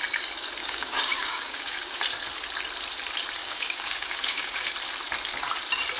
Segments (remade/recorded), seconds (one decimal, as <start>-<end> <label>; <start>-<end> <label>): 0.0-0.6 recorded; 0.6-2.0 remade; 2.0-3.4 recorded; 3.4-4.7 remade; 4.7-6.0 recorded